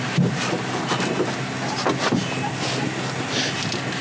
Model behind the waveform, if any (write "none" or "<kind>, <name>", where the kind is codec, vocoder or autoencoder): none